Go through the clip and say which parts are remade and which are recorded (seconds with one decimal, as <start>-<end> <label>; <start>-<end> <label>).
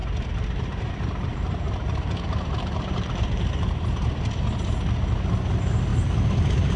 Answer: 0.0-4.1 remade; 4.1-5.9 recorded; 5.9-6.8 remade